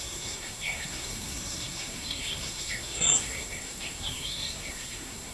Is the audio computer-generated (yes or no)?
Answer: yes